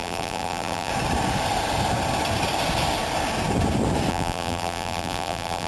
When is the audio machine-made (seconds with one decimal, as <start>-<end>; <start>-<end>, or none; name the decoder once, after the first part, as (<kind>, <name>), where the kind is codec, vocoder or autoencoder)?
0.0-0.9 (vocoder, BigVGAN v2); 4.1-5.7